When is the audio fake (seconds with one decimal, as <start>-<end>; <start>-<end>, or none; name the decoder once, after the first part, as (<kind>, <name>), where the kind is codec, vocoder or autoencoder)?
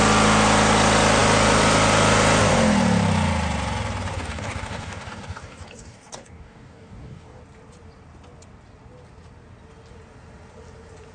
4.1-7.4 (codec, DAC)